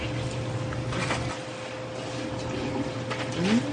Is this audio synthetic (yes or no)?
no